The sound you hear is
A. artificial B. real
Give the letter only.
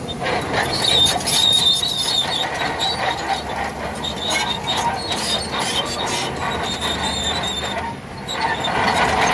B